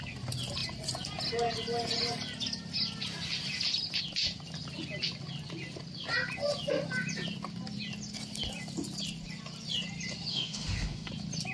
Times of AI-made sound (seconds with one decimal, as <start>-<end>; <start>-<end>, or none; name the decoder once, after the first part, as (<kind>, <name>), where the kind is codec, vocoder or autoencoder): 10.3-11.1 (autoencoder, DAC-VAE)